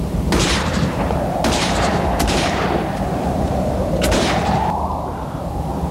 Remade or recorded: remade